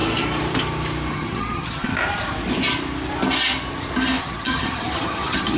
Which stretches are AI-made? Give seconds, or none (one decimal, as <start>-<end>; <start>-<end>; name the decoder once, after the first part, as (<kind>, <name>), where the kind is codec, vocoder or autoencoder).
1.1-1.9 (vocoder, HiFi-GAN); 4.2-5.6